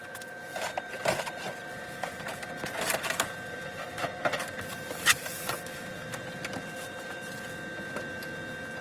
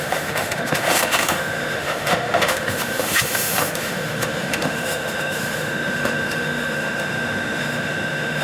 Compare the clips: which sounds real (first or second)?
first